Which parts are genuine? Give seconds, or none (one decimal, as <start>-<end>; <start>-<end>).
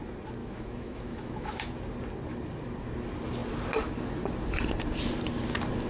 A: 0.0-0.4; 1.6-5.9